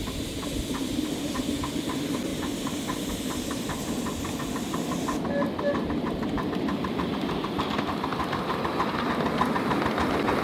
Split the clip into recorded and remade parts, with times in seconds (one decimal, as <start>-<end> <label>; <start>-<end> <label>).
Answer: 0.0-10.4 recorded